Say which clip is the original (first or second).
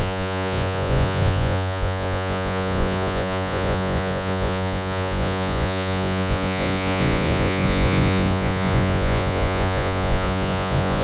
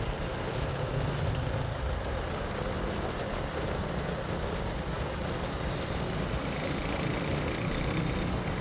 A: second